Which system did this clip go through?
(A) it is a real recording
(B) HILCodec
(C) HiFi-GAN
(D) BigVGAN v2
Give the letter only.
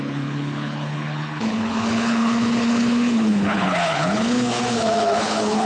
B